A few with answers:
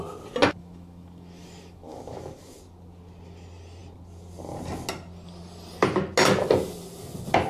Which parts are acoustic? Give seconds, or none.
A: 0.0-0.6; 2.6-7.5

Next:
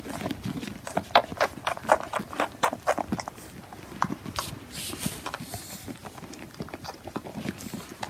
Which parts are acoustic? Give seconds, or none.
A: 0.0-6.0; 7.2-8.1

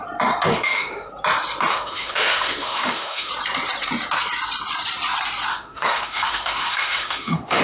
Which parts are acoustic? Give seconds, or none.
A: 0.0-0.5; 1.1-1.7; 3.3-5.5